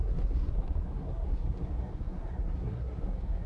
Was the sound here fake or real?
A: fake